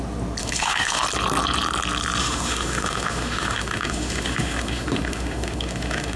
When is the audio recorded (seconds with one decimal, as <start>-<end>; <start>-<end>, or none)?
0.0-0.4; 1.0-2.2